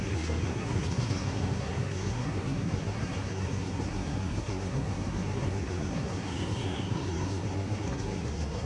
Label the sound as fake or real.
fake